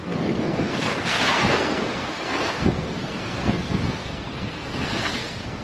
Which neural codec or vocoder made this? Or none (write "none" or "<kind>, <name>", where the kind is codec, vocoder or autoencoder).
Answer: codec, SNAC